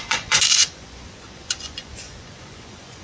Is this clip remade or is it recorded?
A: remade